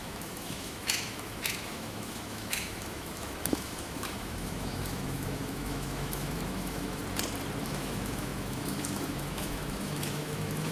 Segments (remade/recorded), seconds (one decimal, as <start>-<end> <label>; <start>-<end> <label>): 0.0-7.0 remade; 7.0-7.6 recorded; 7.6-10.7 remade